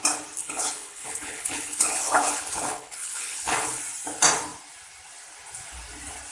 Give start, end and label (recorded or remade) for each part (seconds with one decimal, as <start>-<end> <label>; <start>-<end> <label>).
0.0-0.4 recorded; 0.4-3.8 remade; 3.8-6.3 recorded